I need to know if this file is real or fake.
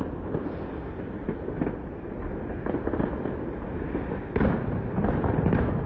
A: real